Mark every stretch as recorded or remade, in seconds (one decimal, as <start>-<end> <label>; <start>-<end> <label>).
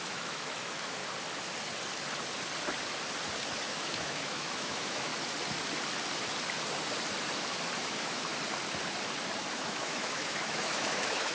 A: 0.0-1.0 remade; 1.0-3.7 recorded; 3.7-5.1 remade; 5.1-7.8 recorded; 7.8-8.3 remade; 8.3-9.5 recorded; 9.5-11.3 remade